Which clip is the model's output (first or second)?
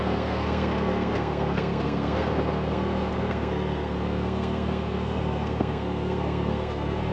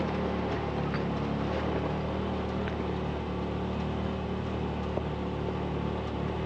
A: first